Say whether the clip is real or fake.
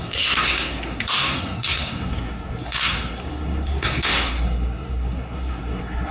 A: fake